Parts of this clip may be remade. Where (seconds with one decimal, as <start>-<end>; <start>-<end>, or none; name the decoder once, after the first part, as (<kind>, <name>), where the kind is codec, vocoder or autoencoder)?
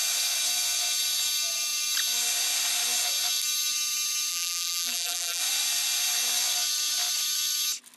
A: 4.3-5.4 (vocoder, BigVGAN v2)